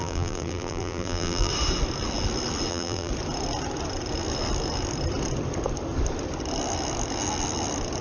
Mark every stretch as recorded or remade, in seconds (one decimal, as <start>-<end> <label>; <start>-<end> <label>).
0.0-1.5 remade; 1.5-2.7 recorded; 2.7-3.1 remade; 3.1-8.0 recorded